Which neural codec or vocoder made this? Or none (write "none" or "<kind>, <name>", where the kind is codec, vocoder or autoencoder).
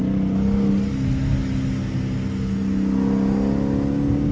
none